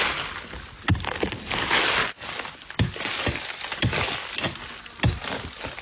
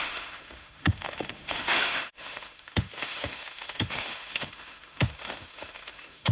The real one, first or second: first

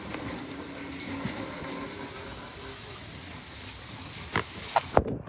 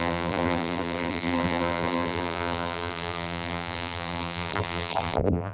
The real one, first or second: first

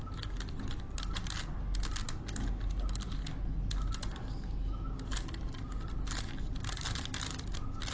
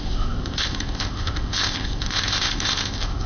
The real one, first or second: first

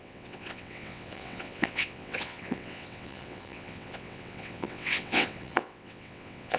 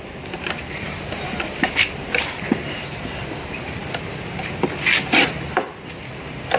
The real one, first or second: second